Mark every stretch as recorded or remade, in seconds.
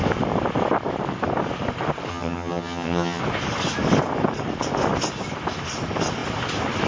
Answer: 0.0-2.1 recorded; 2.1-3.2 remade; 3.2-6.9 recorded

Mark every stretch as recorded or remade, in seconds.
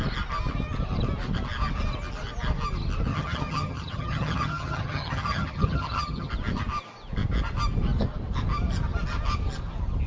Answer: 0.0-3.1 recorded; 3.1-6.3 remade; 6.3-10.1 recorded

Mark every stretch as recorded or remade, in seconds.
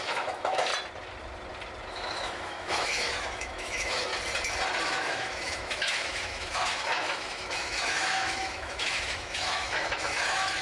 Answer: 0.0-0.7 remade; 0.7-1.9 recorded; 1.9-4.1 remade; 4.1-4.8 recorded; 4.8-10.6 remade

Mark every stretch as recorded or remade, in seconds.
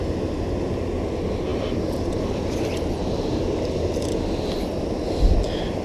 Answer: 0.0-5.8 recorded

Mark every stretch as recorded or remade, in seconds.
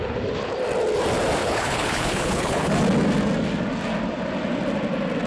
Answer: 0.0-1.4 recorded; 1.4-2.7 remade; 2.7-5.3 recorded